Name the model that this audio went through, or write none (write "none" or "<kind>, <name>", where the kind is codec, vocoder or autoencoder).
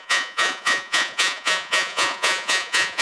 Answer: vocoder, Vocos